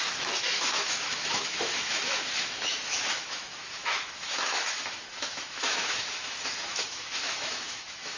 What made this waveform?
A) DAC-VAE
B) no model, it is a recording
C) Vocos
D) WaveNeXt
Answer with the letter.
A